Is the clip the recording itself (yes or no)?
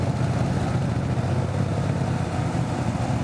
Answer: yes